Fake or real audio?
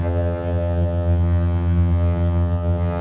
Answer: fake